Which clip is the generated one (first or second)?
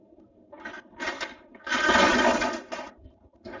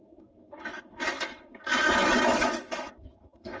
second